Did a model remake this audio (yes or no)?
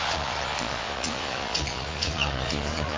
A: yes